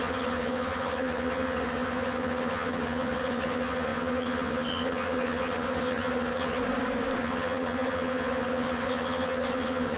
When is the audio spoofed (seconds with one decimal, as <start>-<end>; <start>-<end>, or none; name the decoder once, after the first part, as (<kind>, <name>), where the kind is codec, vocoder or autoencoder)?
0.0-6.6 (vocoder, HiFi-GAN); 7.2-10.0